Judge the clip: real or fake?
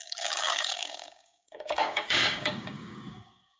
fake